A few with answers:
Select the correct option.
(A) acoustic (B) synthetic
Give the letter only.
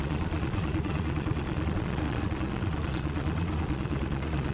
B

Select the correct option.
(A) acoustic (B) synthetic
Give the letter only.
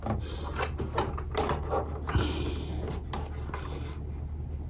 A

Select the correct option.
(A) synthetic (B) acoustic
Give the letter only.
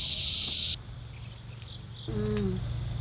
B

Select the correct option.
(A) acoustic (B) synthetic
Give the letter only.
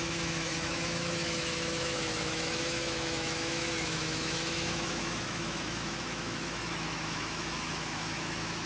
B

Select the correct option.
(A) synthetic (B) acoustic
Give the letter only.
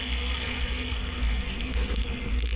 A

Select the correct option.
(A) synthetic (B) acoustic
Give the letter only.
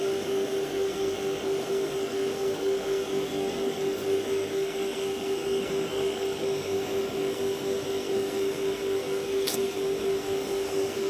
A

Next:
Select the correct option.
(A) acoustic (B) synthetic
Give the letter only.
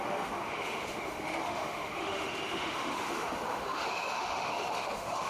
B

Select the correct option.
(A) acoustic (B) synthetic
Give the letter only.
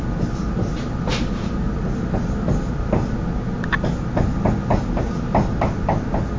A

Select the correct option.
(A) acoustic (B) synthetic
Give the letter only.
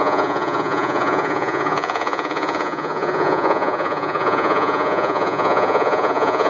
B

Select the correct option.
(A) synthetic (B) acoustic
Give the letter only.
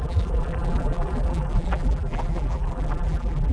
A